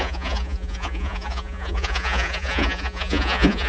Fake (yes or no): yes